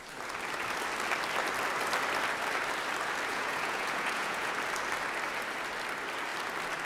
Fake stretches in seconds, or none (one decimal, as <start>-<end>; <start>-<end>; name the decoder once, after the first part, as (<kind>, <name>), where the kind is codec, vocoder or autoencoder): 3.3-4.5 (vocoder, Vocos)